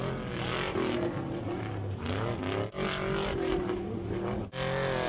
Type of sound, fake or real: real